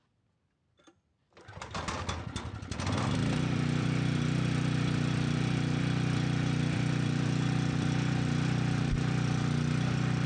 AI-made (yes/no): yes